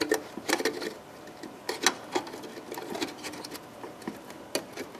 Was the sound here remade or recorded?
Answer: recorded